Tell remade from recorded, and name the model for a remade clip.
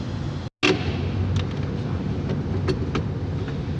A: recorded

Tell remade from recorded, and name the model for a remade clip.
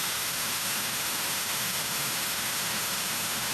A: remade, autoencoder, DAC-VAE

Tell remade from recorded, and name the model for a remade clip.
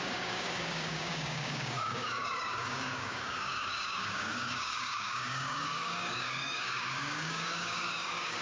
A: remade, codec, DAC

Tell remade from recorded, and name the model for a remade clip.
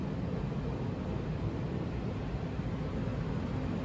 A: recorded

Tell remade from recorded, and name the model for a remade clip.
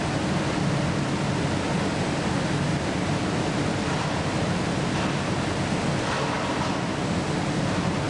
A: recorded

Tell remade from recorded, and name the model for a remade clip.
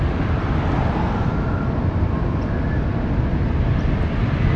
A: recorded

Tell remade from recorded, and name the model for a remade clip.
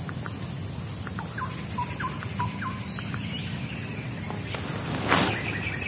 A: recorded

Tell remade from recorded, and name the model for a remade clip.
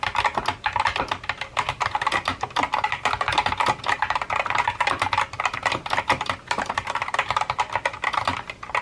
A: recorded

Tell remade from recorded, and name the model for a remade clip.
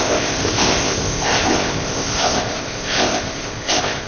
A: remade, codec, ZipCodec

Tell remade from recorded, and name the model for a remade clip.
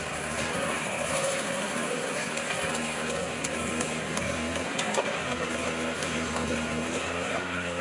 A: remade, codec, SNAC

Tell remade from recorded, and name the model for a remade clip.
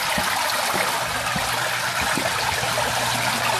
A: recorded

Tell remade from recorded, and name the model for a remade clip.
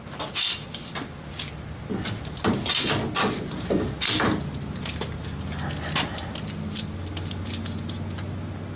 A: recorded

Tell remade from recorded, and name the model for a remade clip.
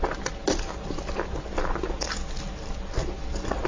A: recorded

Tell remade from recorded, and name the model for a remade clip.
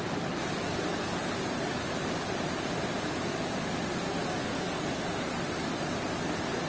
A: recorded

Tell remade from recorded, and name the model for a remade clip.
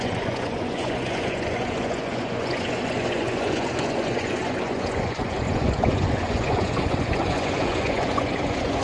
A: remade, vocoder, Vocos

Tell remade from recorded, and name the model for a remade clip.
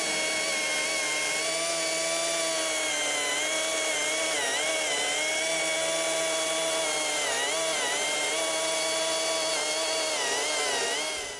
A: recorded